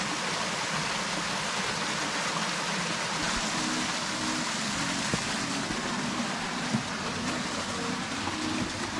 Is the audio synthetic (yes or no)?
no